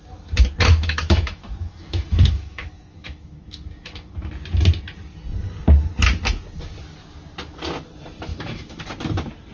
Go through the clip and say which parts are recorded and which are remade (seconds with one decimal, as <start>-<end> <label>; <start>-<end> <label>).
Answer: 0.0-0.7 recorded; 0.7-4.3 remade; 4.3-8.3 recorded; 8.3-8.8 remade; 8.8-9.5 recorded